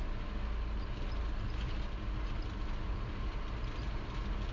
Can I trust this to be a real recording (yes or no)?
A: yes